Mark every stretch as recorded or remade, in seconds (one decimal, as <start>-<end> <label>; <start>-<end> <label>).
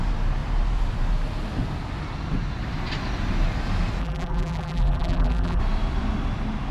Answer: 0.0-4.0 recorded; 4.0-5.6 remade; 5.6-6.7 recorded